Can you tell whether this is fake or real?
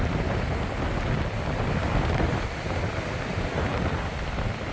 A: real